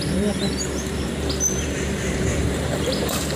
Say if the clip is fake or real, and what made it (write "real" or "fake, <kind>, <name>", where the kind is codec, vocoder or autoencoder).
fake, vocoder, BigVGAN v2